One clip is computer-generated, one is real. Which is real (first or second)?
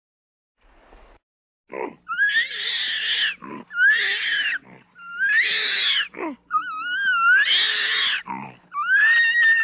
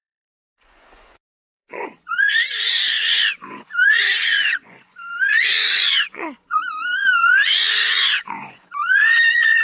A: first